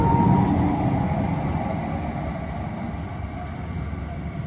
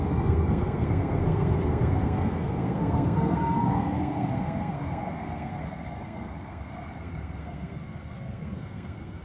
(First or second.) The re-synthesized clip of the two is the second